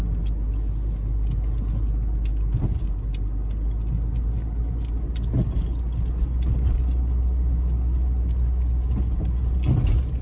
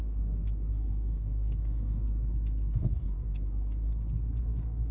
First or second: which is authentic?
first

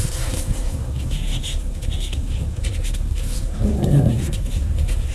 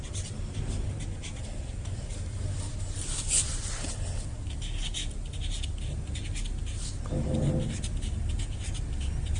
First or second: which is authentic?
second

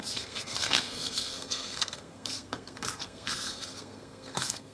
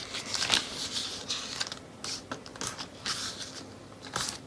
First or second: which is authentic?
second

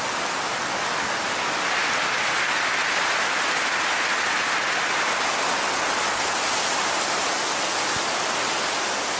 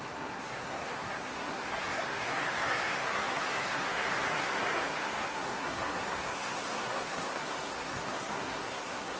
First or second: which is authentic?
first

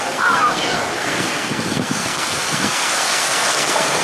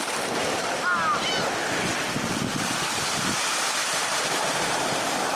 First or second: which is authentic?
second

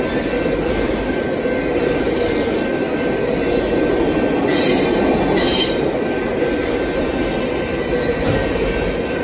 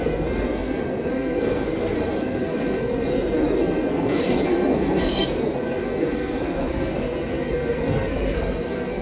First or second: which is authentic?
first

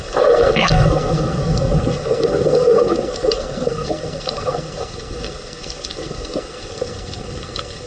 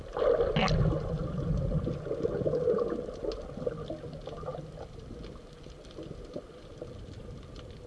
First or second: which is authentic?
second